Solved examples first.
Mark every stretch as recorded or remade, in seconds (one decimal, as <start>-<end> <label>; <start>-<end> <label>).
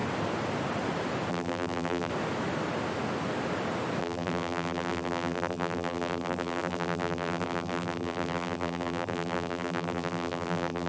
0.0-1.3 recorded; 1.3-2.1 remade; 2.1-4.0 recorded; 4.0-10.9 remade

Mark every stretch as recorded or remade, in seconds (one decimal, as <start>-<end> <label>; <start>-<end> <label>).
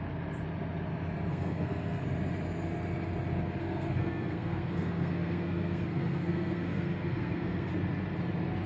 0.0-1.3 recorded; 1.3-2.0 remade; 2.0-3.6 recorded; 3.6-7.7 remade; 7.7-8.7 recorded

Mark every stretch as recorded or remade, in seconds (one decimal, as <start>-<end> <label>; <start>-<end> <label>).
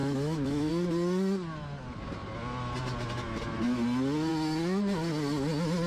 0.0-0.7 remade; 0.7-5.9 recorded